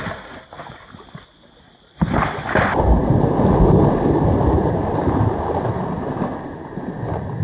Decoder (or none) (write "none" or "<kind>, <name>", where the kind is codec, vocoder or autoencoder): none